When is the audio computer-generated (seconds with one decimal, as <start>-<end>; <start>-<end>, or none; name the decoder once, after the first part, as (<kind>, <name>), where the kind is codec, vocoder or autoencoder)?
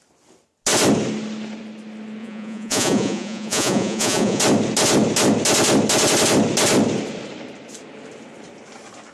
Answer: 2.2-4.4 (vocoder, Vocos)